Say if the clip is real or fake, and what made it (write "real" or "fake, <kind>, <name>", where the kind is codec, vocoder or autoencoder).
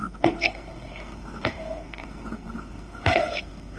fake, codec, SNAC